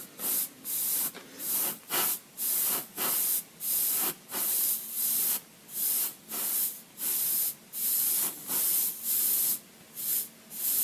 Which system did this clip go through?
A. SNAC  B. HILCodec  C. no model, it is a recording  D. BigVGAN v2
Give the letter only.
C